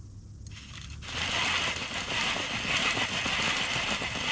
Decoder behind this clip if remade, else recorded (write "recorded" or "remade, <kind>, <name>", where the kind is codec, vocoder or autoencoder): recorded